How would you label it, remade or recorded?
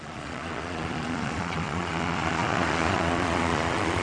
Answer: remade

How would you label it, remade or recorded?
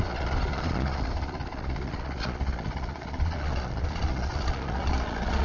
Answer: remade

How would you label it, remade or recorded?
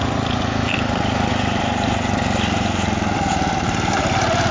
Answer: recorded